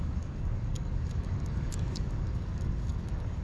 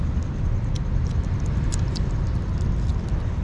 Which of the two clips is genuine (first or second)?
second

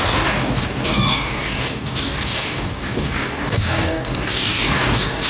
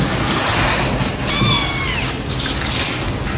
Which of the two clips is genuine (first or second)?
second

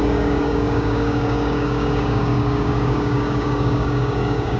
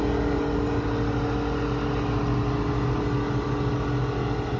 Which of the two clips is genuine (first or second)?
second